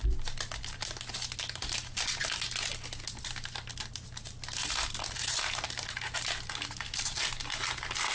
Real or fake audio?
real